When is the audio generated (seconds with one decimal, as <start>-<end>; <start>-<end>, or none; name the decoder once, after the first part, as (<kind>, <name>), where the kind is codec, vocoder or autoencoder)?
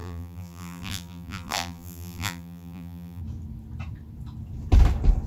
0.0-3.2 (vocoder, BigVGAN v2)